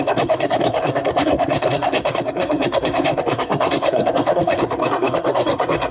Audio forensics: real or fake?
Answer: fake